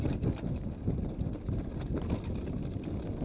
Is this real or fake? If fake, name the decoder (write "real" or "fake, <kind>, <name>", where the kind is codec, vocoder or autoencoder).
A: real